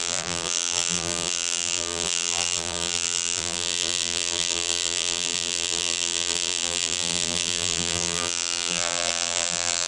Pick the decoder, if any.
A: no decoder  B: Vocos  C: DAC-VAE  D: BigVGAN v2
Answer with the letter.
D